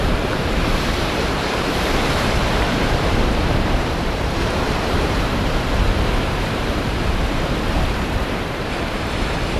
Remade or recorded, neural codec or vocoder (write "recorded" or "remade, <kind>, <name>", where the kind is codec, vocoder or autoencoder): remade, vocoder, BigVGAN v2